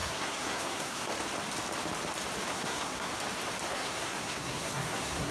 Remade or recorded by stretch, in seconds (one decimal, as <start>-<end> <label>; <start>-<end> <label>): 0.0-1.1 remade; 1.1-2.5 recorded; 2.5-3.1 remade; 3.1-3.7 recorded; 3.7-5.3 remade